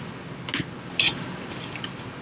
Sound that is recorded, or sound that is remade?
recorded